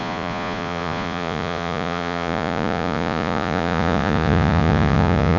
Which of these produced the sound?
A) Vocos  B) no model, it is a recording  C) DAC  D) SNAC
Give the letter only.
A